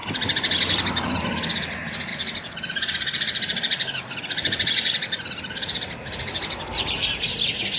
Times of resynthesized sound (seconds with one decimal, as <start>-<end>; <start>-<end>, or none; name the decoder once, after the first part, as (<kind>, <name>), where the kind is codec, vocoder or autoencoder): none